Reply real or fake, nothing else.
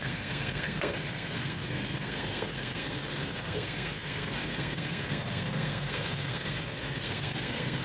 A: fake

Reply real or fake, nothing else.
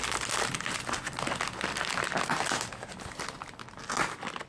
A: real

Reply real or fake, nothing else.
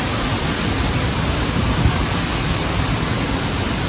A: real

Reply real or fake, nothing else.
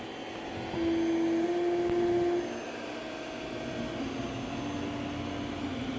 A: real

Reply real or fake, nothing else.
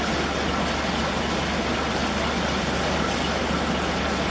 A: real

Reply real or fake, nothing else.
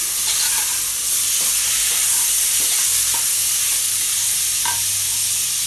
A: real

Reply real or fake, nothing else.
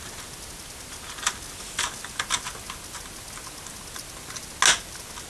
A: real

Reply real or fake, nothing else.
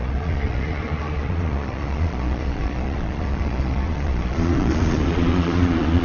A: fake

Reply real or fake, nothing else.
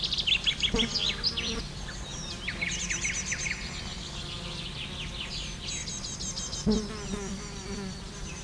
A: real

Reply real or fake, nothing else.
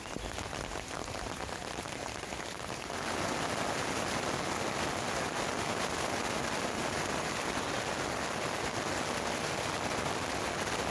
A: real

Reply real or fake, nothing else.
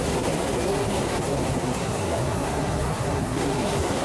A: fake